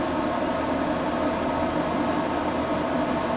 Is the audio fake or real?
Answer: real